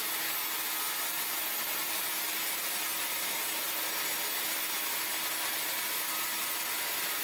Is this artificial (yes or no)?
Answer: no